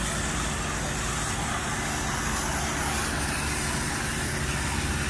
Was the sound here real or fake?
real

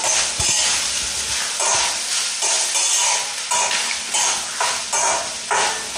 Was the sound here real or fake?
real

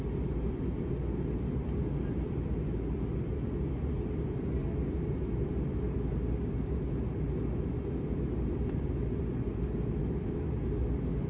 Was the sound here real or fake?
real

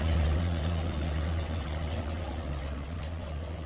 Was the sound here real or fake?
fake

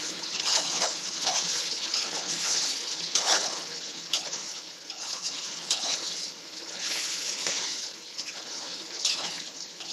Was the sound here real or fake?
fake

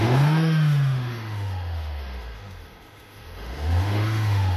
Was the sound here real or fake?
fake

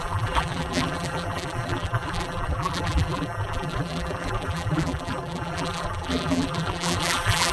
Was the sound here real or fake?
fake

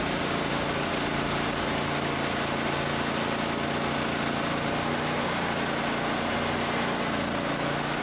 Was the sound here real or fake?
real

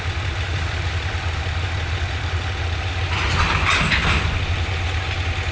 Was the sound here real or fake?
real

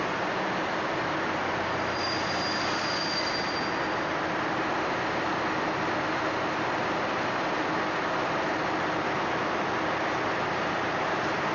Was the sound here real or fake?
real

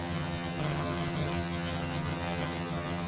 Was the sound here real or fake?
fake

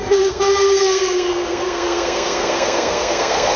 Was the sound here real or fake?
fake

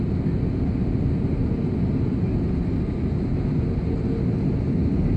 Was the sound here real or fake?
real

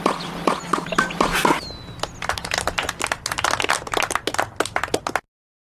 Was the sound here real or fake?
real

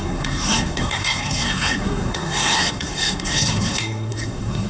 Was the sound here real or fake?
fake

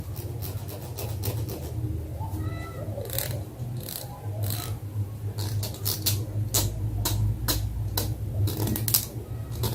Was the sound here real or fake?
real